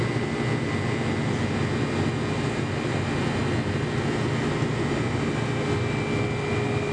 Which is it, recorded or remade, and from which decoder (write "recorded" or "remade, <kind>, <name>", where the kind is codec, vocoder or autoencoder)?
recorded